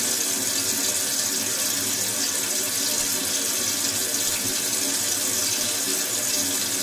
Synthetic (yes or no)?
no